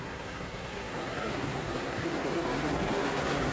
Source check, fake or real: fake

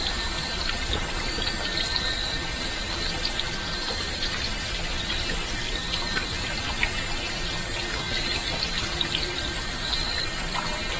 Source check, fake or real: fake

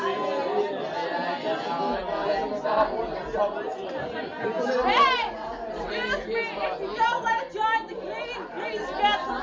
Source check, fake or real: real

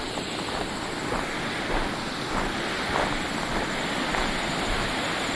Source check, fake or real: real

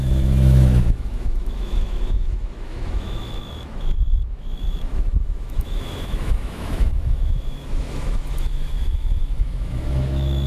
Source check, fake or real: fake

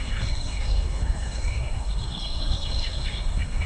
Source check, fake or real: fake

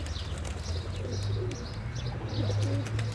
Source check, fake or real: real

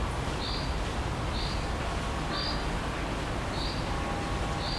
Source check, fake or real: real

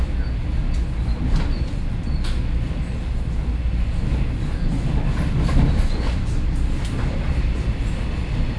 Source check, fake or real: real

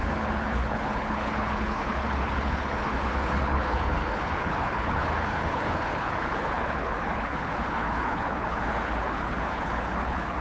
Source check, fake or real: fake